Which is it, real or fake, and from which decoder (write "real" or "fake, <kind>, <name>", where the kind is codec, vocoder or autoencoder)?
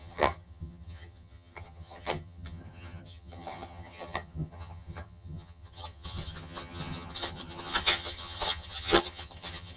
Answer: fake, vocoder, HiFi-GAN